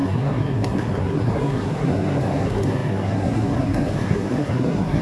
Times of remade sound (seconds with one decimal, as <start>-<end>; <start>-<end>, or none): 0.0-5.0